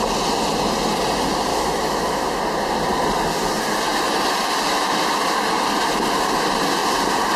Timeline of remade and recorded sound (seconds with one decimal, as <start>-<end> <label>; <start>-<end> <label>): 0.0-1.5 recorded; 1.5-2.4 remade; 2.4-7.4 recorded